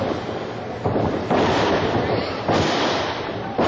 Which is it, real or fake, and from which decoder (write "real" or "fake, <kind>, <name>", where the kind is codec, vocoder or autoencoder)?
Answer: real